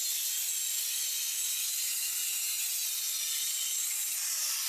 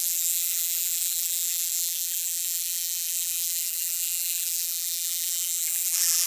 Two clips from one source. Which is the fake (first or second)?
second